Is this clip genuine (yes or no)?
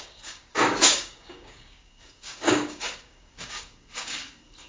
no